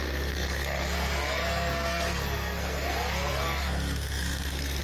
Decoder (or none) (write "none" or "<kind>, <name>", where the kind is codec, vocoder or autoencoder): codec, SNAC